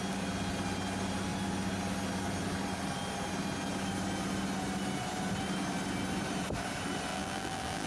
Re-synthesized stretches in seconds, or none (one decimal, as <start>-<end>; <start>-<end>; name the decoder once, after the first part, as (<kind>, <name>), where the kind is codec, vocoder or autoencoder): 7.1-7.9 (vocoder, BigVGAN v2)